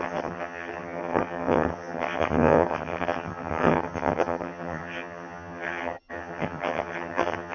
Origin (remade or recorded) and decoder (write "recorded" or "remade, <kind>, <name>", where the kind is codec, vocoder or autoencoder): remade, vocoder, HiFi-GAN